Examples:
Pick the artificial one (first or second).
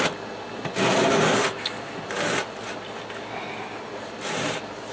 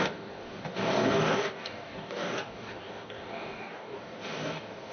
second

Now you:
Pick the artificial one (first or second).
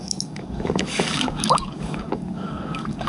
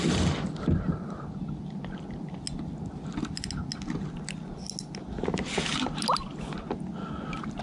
first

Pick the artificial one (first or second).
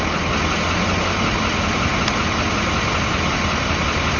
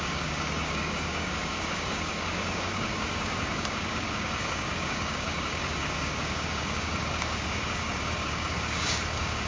second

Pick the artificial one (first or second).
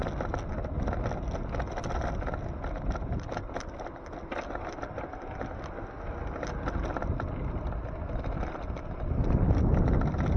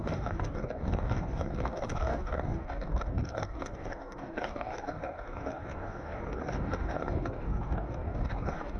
second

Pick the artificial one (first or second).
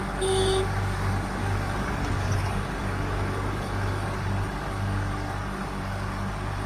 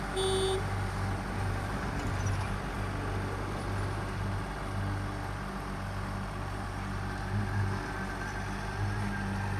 first